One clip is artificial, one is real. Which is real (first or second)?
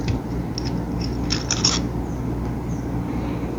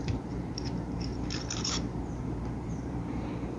first